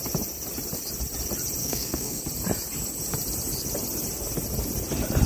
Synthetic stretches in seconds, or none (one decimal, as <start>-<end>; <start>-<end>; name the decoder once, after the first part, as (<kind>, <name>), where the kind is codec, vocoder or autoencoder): 1.6-2.2 (codec, SNAC)